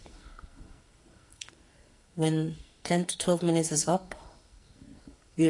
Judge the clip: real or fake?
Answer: fake